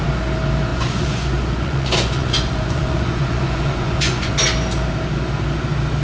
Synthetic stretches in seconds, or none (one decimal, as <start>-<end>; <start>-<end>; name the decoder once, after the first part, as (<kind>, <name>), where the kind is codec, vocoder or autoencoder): 0.7-4.3 (vocoder, Vocos)